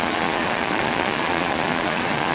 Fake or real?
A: fake